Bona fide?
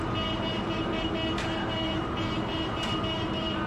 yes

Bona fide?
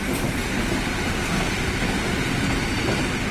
yes